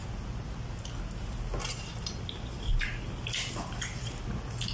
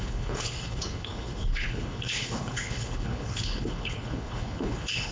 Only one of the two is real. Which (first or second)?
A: first